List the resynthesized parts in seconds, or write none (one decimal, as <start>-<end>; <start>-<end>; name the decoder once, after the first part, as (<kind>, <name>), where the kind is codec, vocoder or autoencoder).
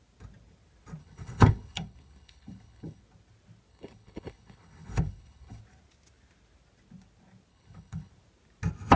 1.0-3.0 (codec, HILCodec); 3.7-5.6; 7.5-8.1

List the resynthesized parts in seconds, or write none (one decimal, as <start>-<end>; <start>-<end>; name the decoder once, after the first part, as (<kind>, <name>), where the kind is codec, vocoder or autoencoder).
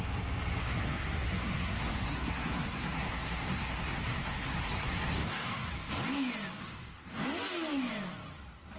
0.6-5.7 (codec, SNAC); 6.6-7.2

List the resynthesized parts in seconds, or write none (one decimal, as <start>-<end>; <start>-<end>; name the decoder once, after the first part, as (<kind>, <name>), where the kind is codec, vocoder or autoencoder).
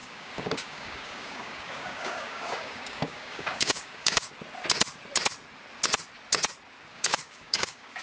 0.0-4.3 (codec, DAC); 6.9-8.0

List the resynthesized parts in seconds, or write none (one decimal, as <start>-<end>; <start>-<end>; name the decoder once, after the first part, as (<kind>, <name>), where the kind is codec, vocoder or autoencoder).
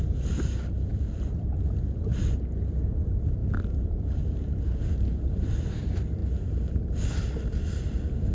0.9-2.0 (vocoder, BigVGAN v2); 3.4-5.7; 6.2-8.3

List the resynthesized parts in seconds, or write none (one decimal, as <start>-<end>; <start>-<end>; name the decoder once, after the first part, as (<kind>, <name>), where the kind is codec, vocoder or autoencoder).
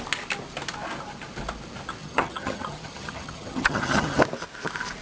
2.0-4.2 (vocoder, HiFi-GAN)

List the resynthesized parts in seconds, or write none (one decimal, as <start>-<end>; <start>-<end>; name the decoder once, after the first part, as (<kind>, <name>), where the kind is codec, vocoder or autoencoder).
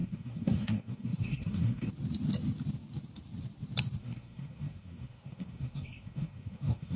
0.0-1.9 (codec, SNAC); 4.0-7.0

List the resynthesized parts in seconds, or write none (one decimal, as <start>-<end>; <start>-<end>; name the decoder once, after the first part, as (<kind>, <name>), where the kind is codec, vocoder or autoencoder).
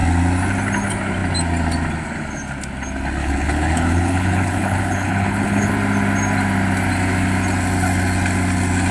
3.2-5.7 (codec, HILCodec)